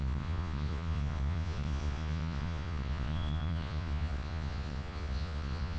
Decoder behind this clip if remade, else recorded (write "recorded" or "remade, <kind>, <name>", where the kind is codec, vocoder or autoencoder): remade, vocoder, Vocos